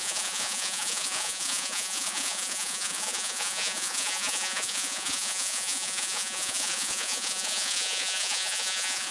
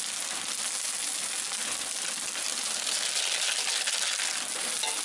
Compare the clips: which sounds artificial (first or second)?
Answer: first